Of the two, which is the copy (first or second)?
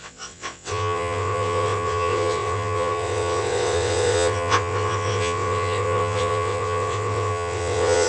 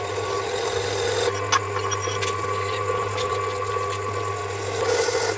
first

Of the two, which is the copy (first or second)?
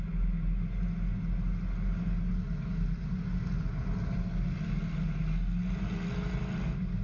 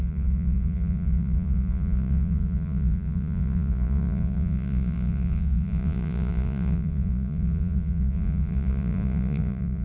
second